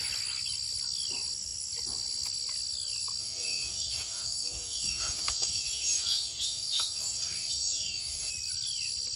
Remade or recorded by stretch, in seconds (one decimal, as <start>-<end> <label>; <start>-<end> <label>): 0.0-3.2 recorded; 3.2-8.3 remade; 8.3-9.2 recorded